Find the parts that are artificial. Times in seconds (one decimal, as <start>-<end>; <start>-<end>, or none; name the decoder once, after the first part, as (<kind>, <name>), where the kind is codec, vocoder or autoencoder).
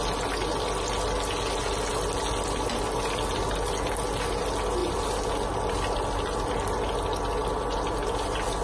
none